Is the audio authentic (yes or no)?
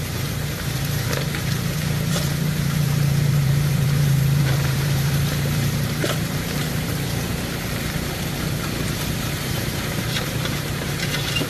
no